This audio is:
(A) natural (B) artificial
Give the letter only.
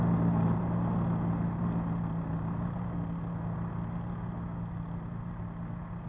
A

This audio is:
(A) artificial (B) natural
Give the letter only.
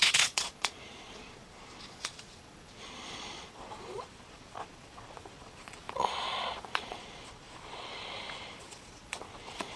A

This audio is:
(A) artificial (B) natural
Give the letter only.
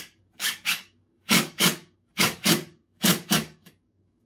A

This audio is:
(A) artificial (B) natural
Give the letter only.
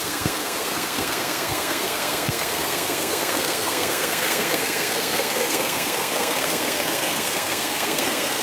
A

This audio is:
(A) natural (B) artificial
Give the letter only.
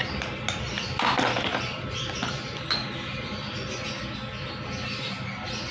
A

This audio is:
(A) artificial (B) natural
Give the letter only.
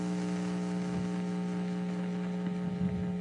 B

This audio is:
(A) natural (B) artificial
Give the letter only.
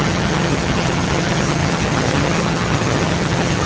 B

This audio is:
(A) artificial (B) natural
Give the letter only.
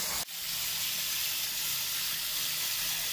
B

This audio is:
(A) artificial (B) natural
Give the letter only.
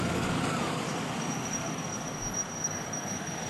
A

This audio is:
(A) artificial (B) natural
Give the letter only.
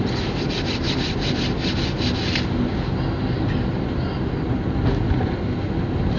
B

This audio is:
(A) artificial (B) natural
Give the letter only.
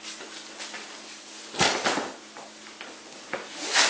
B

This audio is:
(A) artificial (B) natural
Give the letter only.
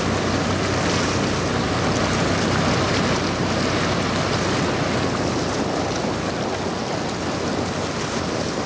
B